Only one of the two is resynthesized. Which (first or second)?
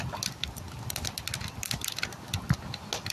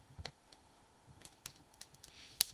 second